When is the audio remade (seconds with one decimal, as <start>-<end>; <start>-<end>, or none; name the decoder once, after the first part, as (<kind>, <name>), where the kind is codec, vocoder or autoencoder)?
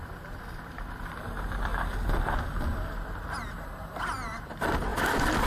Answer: 0.0-1.7 (vocoder, BigVGAN v2); 3.7-5.5